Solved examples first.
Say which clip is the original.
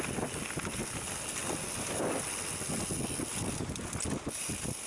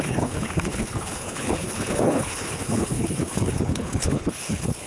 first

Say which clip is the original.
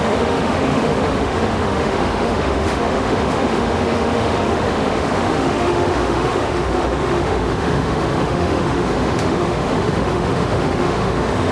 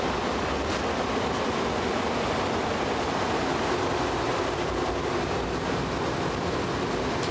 second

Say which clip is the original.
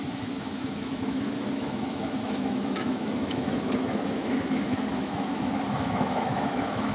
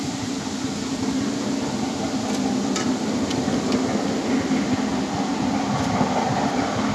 second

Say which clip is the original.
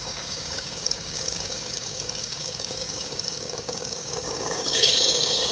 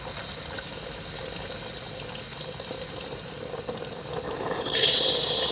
second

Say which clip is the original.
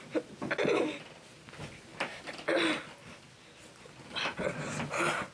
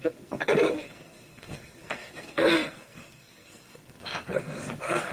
first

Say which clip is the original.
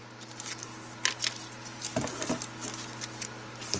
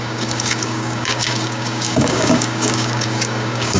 first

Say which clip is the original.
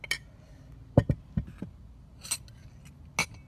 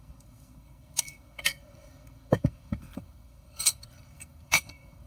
first